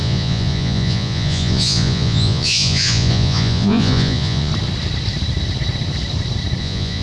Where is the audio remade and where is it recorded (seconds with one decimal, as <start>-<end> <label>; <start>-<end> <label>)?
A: 0.0-4.5 remade; 4.5-6.6 recorded; 6.6-7.0 remade